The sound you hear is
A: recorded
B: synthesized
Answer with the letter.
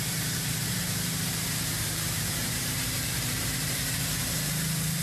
B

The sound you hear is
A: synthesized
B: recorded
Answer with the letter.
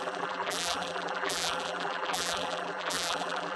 A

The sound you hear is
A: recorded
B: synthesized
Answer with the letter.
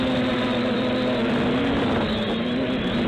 B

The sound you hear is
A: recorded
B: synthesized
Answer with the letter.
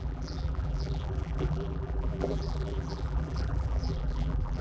B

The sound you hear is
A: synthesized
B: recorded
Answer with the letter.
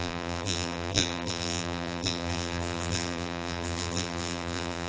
A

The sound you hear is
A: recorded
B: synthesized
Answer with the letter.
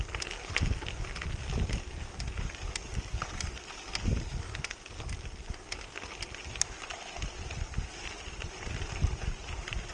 B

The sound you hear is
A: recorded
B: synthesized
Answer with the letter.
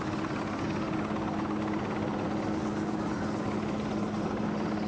A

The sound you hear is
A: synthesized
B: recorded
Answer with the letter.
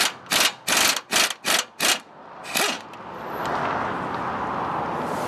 B